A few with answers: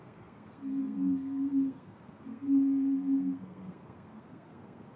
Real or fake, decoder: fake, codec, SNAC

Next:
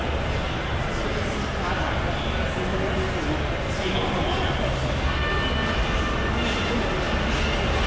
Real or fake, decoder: real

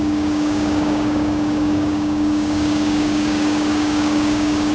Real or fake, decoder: fake, codec, DAC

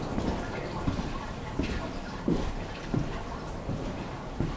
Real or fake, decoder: real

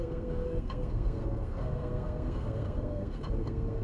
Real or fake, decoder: fake, codec, SNAC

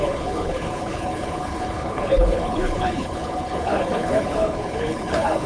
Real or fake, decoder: fake, codec, HILCodec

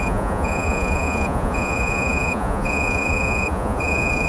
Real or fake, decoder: fake, vocoder, Vocos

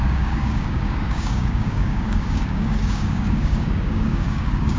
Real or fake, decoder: fake, codec, DAC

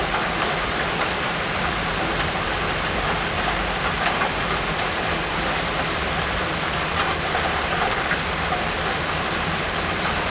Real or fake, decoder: fake, vocoder, BigVGAN v2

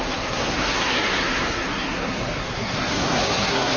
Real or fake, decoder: fake, codec, SNAC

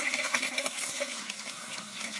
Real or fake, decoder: fake, codec, SNAC